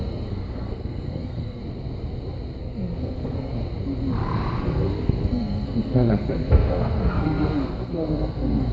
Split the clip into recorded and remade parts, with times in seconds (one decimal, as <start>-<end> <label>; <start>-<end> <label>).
0.0-1.6 remade; 1.6-2.6 recorded; 2.6-3.5 remade; 3.5-4.6 recorded; 4.6-8.7 remade